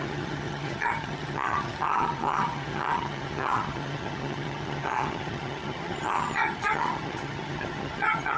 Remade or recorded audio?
remade